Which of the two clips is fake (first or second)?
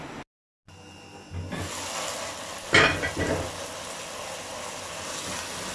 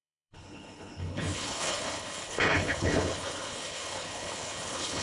second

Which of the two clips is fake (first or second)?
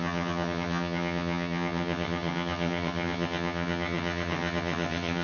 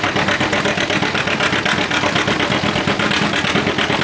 first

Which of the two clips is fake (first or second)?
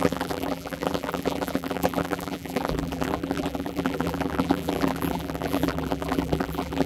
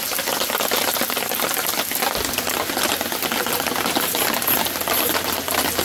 first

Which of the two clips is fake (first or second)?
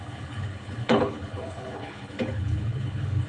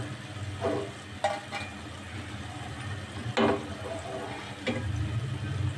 first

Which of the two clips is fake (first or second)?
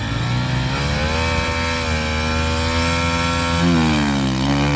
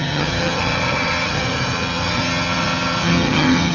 second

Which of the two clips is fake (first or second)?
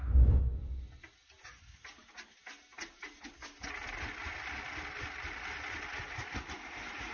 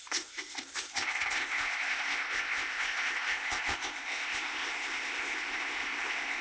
second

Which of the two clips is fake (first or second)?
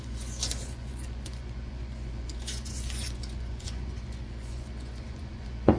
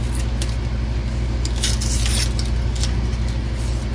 first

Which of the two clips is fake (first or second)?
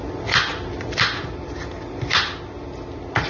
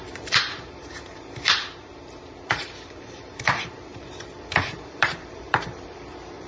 second